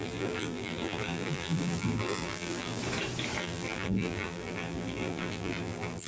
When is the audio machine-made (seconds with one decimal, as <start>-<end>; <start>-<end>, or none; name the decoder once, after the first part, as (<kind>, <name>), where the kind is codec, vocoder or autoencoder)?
0.0-2.8 (vocoder, BigVGAN v2); 3.4-6.1